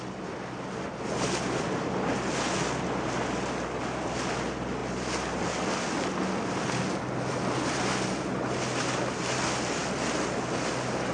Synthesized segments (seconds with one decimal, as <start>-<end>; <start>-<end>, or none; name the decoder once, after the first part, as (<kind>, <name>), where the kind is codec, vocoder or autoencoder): none